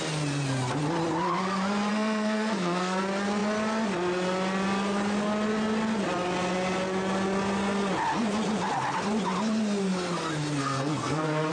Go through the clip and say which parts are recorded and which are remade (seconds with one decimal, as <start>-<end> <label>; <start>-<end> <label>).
0.0-1.9 recorded; 1.9-3.0 remade; 3.0-10.6 recorded; 10.6-11.5 remade